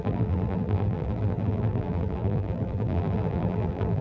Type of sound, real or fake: fake